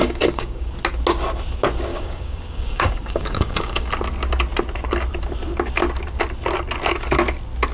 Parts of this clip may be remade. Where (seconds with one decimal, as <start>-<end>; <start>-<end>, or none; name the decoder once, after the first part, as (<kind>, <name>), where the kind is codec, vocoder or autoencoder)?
0.0-0.7 (codec, DAC); 1.9-3.9